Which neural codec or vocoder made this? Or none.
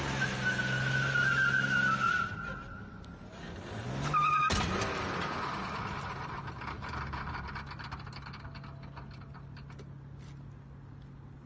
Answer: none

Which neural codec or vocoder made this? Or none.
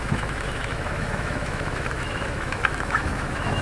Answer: autoencoder, DAC-VAE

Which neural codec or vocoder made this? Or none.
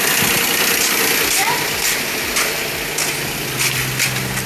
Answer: none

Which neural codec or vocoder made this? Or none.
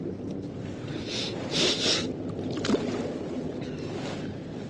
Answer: vocoder, BigVGAN v2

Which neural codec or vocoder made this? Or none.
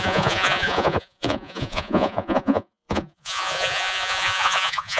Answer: vocoder, Vocos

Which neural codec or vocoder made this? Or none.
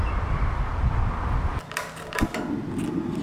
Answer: none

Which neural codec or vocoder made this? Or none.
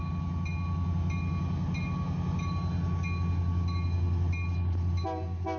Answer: none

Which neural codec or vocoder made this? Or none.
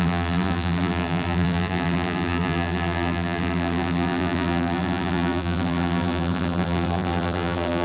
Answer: vocoder, BigVGAN v2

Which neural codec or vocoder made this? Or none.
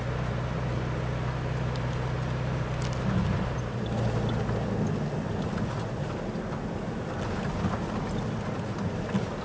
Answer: none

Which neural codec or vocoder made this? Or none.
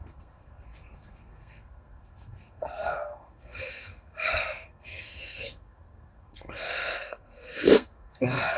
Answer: codec, SNAC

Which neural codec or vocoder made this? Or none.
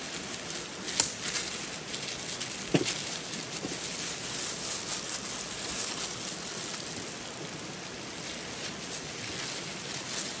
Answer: none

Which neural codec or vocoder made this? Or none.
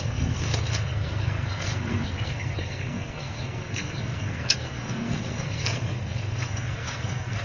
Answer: codec, SNAC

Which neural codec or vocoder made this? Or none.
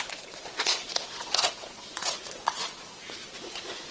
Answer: vocoder, Vocos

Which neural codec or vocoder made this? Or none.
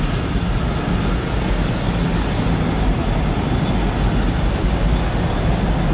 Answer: none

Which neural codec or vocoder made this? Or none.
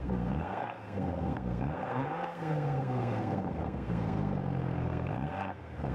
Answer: codec, SNAC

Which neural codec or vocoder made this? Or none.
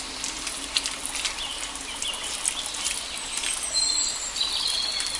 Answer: none